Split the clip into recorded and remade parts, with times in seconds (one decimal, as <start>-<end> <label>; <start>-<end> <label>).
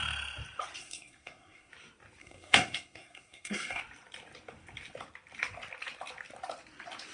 0.0-0.8 recorded; 0.8-1.7 remade; 1.7-2.2 recorded; 2.2-3.8 remade; 3.8-7.1 recorded